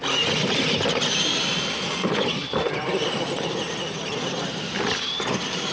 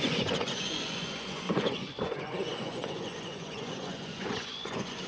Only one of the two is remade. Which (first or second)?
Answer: second